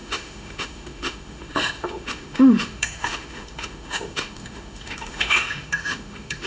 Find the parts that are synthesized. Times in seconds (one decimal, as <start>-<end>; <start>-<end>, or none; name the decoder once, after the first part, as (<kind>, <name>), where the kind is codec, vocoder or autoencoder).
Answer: 0.0-6.5 (autoencoder, DAC-VAE)